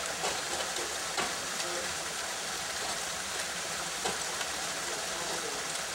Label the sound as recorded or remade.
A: recorded